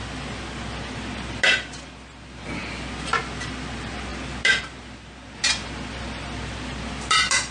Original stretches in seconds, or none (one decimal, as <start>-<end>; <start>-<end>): 0.0-7.5